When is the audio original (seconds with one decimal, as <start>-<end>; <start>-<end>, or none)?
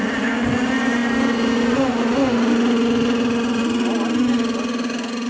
0.0-5.3